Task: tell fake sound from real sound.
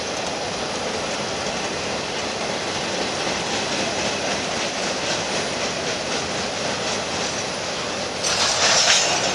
real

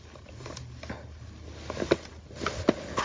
real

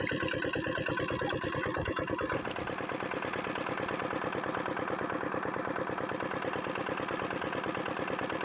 real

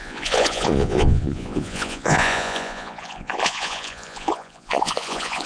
fake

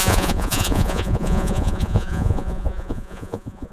fake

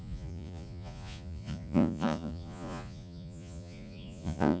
fake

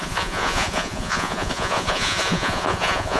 fake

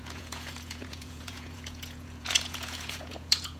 fake